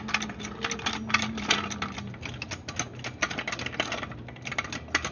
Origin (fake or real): real